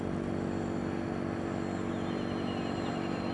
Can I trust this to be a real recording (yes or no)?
yes